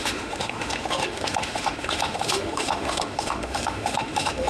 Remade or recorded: remade